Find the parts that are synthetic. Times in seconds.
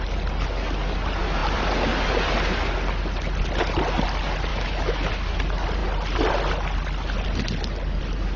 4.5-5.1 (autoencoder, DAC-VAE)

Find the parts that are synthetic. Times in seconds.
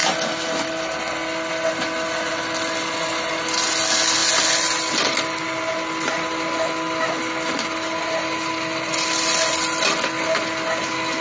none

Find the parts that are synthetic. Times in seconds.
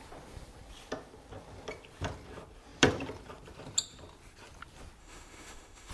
5.0-5.9 (autoencoder, DAC-VAE)